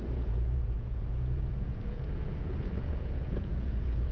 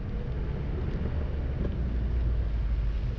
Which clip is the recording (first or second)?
second